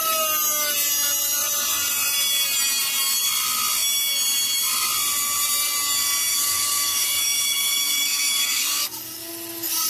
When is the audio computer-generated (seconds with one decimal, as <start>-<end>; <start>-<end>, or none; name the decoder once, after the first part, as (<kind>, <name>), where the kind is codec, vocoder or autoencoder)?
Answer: 6.3-9.3 (codec, DAC)